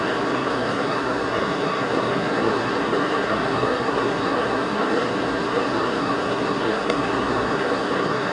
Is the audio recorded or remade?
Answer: remade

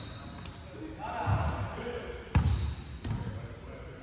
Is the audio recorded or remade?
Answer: recorded